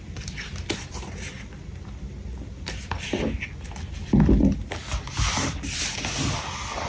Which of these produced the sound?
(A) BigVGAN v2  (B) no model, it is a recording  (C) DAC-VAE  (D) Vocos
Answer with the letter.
B